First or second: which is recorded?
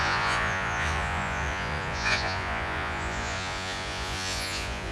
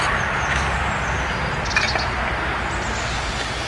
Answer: second